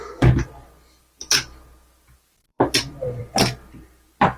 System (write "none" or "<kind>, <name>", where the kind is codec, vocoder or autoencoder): vocoder, BigVGAN v2